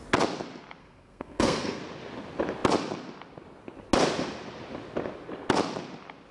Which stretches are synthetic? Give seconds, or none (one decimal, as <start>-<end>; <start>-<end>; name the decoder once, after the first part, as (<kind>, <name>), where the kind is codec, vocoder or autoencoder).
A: 0.8-1.8 (codec, SNAC)